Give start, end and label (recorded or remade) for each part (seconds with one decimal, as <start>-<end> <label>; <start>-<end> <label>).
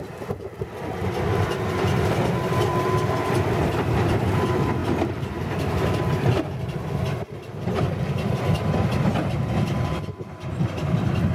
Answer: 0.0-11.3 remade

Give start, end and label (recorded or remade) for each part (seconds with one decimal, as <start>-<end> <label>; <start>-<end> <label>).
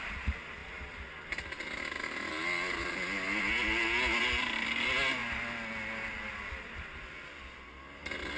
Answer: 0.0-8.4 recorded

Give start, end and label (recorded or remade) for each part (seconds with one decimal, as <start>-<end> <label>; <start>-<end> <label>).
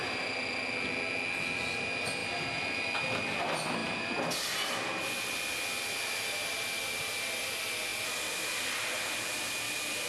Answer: 0.0-10.1 recorded